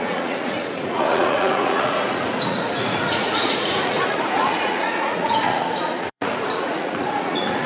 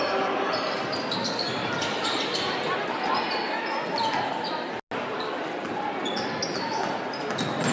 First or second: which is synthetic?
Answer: first